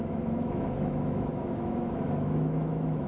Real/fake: fake